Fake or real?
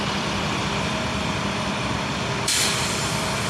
fake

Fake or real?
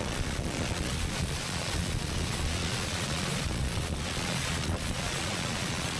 fake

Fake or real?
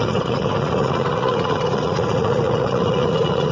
fake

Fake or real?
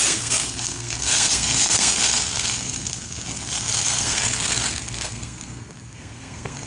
fake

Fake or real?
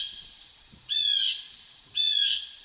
fake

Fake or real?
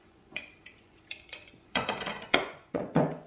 fake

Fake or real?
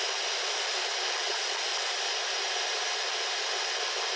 real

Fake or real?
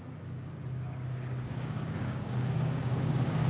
fake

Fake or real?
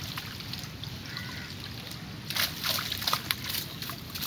real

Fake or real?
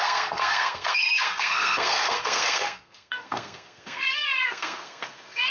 fake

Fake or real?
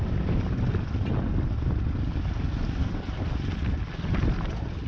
real